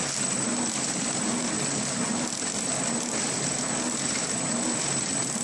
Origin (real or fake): real